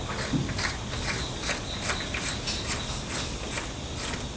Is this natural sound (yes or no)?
yes